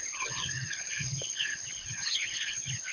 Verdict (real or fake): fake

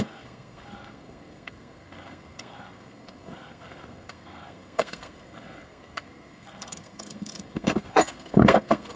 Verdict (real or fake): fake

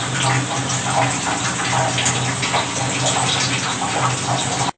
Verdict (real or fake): real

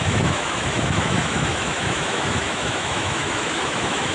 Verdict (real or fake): fake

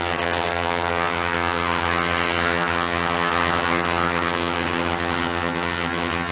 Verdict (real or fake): fake